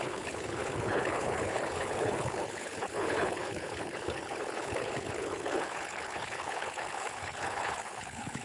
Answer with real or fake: fake